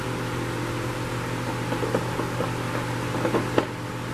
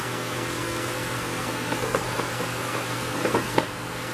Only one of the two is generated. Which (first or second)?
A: second